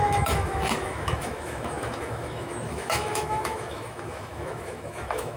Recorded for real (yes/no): no